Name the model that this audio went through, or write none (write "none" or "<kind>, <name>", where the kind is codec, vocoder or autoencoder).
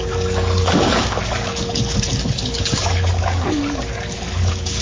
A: codec, DAC